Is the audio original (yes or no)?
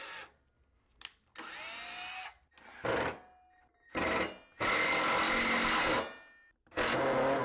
yes